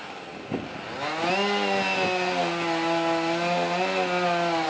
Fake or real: real